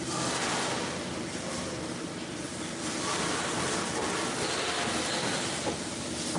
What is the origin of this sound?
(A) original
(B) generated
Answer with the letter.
A